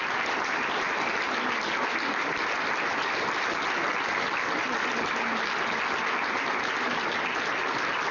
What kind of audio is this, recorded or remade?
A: recorded